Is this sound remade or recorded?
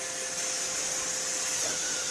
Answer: recorded